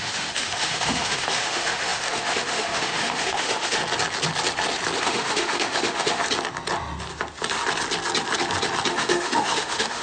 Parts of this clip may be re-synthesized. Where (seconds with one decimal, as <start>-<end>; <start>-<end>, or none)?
0.0-3.8; 5.0-6.2; 8.9-10.0